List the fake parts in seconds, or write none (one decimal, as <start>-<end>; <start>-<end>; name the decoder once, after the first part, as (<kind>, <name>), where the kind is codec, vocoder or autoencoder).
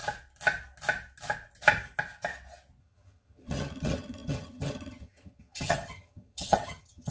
2.8-7.1 (vocoder, HiFi-GAN)